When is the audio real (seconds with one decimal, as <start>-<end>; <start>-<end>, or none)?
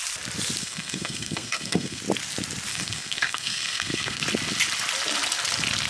0.0-0.6; 2.0-2.7; 4.2-5.9